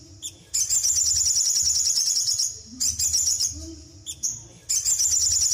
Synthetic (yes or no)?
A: no